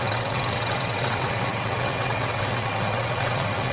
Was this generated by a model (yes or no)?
yes